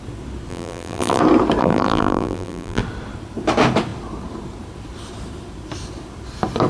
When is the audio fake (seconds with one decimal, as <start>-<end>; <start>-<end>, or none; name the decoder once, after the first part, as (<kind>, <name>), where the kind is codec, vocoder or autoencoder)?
0.5-1.2 (vocoder, BigVGAN v2); 1.6-2.8